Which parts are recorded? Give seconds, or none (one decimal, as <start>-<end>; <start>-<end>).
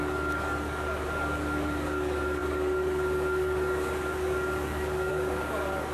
none